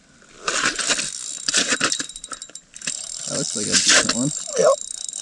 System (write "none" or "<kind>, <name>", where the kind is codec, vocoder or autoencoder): none